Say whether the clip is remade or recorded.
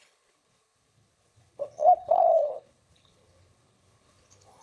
remade